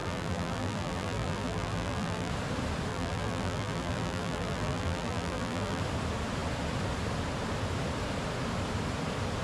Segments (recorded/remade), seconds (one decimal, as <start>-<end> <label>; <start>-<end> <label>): 0.0-2.3 remade; 2.3-2.9 recorded; 2.9-5.8 remade; 5.8-9.4 recorded